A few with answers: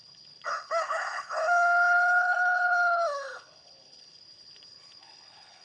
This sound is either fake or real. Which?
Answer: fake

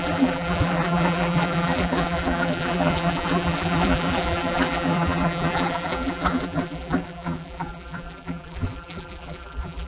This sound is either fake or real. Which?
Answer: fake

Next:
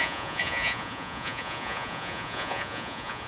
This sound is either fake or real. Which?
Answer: fake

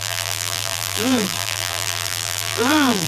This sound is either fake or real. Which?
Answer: fake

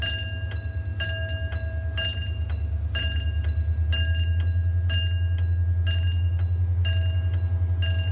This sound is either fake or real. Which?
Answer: real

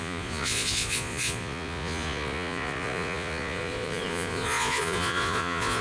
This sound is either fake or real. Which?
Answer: fake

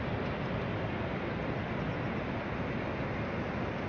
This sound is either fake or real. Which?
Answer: real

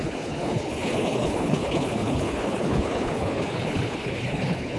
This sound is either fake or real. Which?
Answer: fake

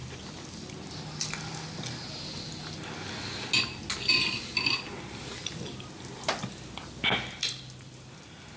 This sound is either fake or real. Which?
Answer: real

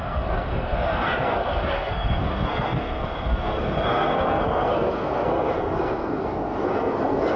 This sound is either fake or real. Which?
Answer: fake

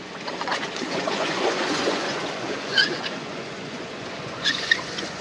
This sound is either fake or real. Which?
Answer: fake